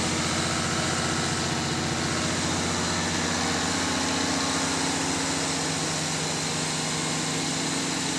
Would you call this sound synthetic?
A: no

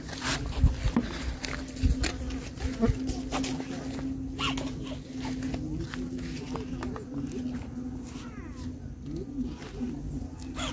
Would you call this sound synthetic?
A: no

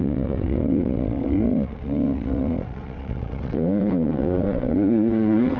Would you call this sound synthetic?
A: yes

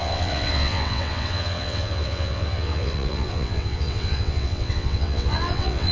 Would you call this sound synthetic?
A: yes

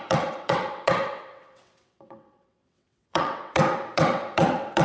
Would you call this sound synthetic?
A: yes